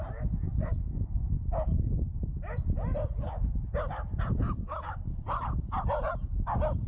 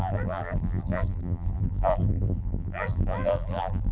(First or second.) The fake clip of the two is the second